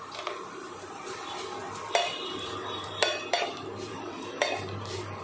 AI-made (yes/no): yes